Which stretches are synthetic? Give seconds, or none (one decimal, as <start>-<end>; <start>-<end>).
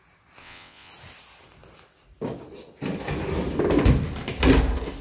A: 0.4-0.9